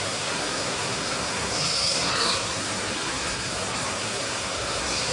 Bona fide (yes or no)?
no